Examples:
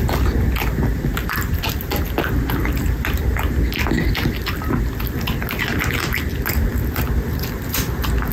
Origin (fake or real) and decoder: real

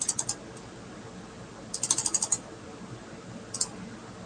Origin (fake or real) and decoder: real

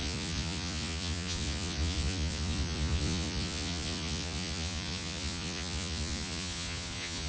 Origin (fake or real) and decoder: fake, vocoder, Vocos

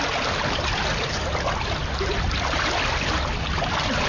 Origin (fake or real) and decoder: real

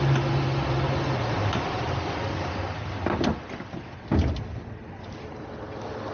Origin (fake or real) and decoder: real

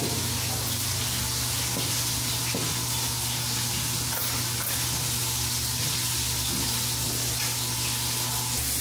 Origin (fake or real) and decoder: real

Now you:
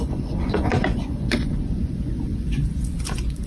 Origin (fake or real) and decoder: fake, vocoder, Vocos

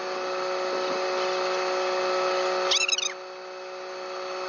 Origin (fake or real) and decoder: real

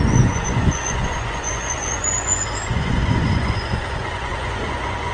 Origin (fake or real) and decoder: fake, vocoder, Vocos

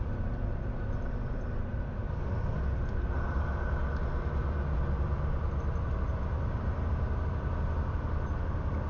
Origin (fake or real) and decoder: real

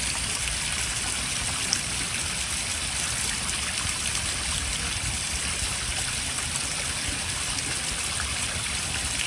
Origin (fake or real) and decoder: real